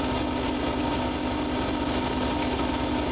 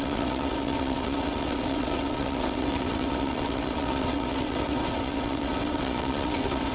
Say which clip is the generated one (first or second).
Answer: second